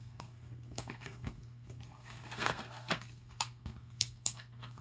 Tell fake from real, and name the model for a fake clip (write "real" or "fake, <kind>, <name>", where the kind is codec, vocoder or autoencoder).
fake, codec, SNAC